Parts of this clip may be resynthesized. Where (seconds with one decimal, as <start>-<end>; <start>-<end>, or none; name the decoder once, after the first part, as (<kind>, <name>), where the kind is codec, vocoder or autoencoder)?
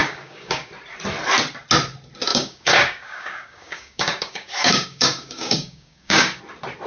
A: 0.0-0.7 (codec, DAC); 2.3-6.4